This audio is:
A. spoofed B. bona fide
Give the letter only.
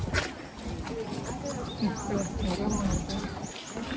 B